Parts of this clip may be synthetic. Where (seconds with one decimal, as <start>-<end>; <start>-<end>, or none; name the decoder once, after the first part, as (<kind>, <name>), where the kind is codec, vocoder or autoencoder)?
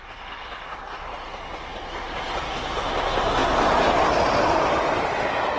none